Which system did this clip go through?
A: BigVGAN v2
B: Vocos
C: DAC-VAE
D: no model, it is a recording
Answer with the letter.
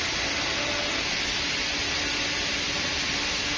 D